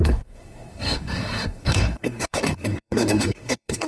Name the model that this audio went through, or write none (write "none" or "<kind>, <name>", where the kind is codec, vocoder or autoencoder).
codec, SNAC